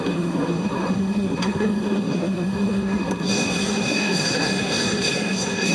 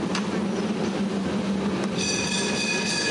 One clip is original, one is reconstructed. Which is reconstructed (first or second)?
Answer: first